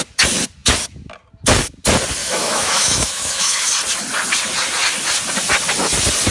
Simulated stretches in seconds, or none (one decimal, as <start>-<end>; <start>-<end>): 2.2-3.7